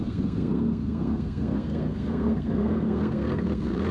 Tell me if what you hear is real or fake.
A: fake